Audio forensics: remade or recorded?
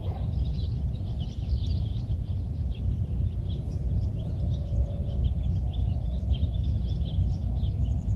recorded